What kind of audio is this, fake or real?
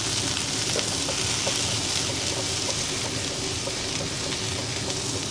real